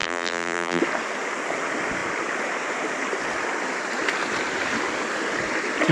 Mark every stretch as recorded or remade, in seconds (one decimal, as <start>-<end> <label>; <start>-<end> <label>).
0.0-0.8 remade; 0.8-5.9 recorded